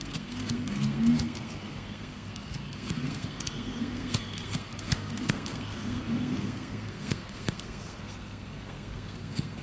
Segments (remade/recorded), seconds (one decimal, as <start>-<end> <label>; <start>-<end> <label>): 0.0-9.6 remade